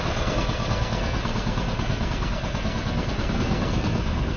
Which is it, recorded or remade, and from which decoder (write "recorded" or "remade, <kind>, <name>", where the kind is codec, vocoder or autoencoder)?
remade, codec, SNAC